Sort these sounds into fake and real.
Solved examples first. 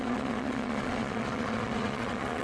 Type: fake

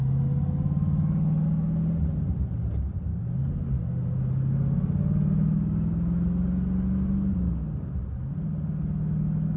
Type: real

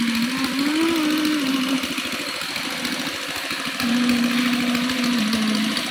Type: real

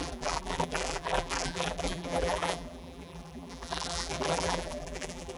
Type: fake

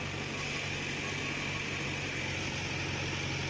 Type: real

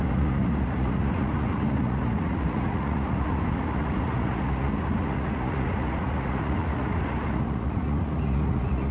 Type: fake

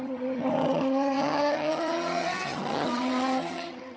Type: fake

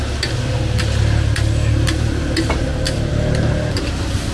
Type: real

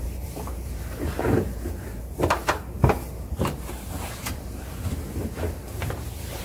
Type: fake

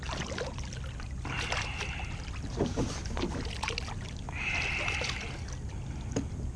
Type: real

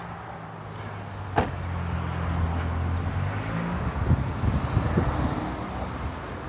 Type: real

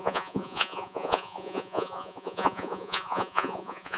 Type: fake